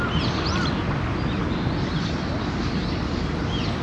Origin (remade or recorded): recorded